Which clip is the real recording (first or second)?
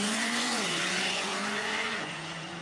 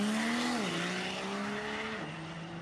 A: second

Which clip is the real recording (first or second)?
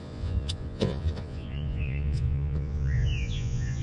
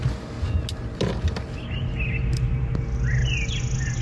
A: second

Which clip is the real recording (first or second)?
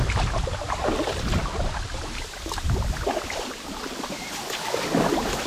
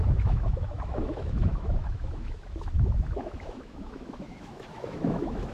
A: first